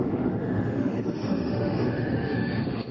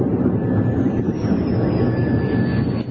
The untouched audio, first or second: second